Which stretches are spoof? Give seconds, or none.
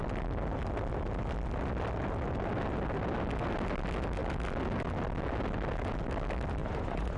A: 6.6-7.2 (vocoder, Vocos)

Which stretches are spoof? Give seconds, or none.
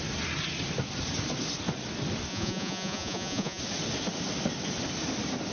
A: 2.3-3.6 (vocoder, Vocos)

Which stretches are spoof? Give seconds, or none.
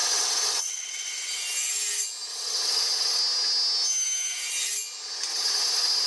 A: 0.0-1.3 (vocoder, WaveNeXt); 2.3-3.2; 5.3-6.1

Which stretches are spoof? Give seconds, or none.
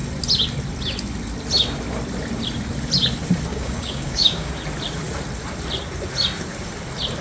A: 3.5-4.5 (codec, DAC)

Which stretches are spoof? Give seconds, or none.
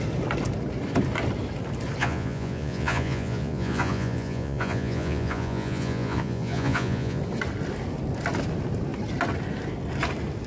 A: 2.0-7.2 (vocoder, Vocos)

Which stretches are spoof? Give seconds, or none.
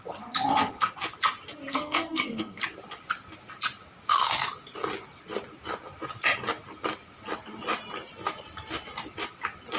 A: 1.7-2.6 (codec, SNAC)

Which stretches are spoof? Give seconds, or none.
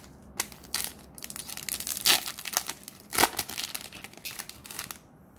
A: none